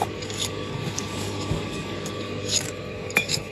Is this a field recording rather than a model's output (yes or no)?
no